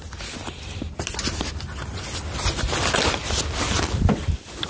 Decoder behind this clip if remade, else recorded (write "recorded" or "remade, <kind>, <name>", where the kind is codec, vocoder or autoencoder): recorded